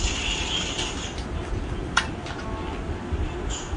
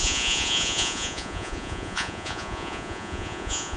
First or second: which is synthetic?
second